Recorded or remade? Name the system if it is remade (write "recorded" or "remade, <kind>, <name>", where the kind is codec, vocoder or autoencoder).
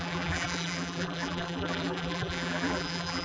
remade, vocoder, BigVGAN v2